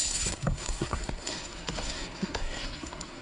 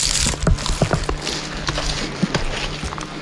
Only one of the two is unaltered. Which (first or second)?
second